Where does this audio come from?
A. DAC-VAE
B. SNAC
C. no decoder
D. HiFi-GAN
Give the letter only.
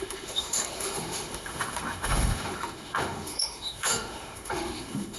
A